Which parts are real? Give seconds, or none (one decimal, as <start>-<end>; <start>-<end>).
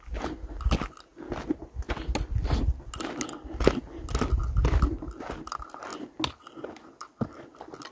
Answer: 0.0-7.9